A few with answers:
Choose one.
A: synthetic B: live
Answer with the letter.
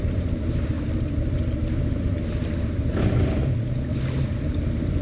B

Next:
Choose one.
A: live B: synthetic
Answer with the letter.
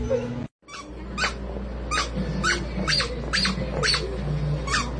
A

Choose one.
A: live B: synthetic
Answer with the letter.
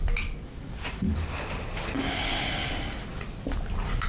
A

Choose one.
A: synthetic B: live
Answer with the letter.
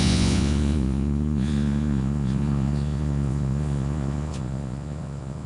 A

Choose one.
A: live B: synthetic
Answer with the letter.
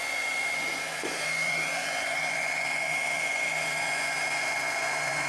B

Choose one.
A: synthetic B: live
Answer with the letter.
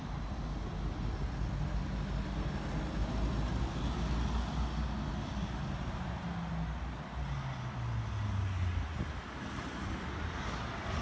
B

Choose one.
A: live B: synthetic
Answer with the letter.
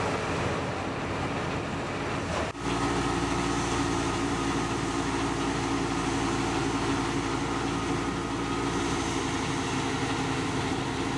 A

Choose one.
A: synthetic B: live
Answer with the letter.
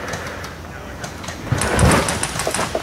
B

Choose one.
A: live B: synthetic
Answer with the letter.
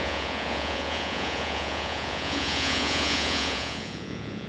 B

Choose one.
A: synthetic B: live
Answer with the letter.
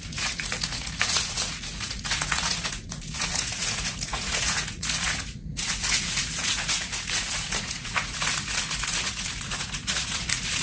A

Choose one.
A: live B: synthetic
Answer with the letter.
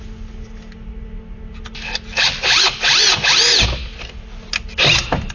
A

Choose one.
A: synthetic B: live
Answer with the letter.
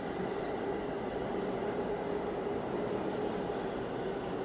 B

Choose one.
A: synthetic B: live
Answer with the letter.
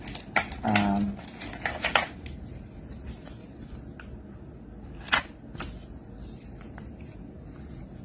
B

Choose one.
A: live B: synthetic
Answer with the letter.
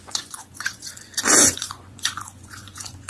B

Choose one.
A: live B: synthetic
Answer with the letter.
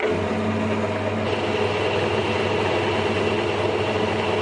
A